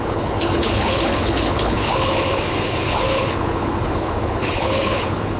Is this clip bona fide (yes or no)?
no